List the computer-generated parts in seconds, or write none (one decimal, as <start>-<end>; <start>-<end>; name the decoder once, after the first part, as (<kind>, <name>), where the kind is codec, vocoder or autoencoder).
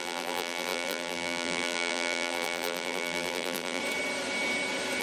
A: 0.0-3.8 (vocoder, BigVGAN v2)